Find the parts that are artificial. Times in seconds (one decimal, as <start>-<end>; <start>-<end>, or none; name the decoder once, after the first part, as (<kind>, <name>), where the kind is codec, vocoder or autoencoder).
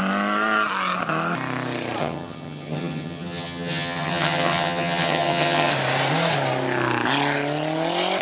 2.0-5.7 (vocoder, HiFi-GAN)